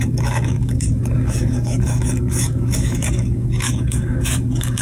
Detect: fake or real fake